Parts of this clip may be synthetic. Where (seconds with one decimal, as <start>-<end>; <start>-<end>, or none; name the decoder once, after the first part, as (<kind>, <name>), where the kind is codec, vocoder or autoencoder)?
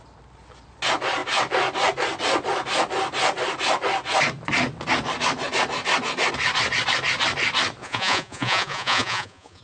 7.8-9.6 (vocoder, Vocos)